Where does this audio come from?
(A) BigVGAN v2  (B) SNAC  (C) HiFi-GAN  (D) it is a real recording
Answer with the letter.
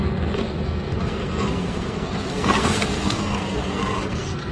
B